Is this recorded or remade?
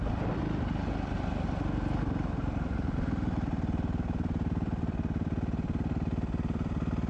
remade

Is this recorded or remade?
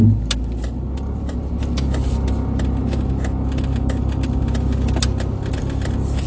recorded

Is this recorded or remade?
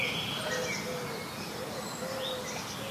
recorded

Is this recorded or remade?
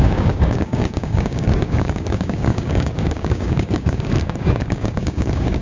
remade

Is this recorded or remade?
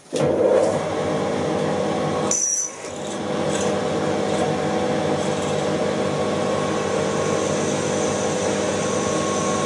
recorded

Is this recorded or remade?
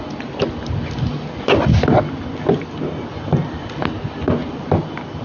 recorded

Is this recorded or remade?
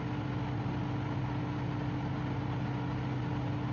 recorded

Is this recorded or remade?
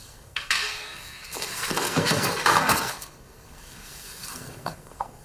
remade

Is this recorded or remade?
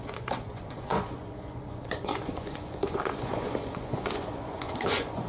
remade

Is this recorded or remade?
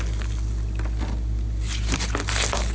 recorded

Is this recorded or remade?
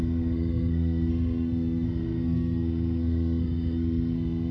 remade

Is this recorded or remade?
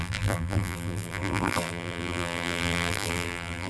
remade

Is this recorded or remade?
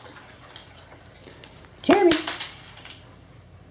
recorded